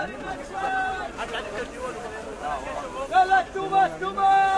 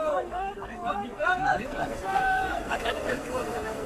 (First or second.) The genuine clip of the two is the first